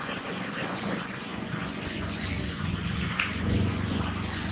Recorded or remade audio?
remade